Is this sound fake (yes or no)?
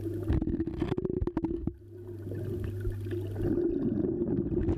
no